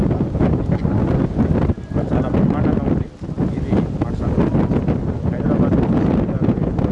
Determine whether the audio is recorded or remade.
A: recorded